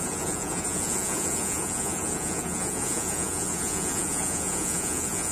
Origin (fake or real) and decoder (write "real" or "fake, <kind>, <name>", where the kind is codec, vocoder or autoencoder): fake, vocoder, Vocos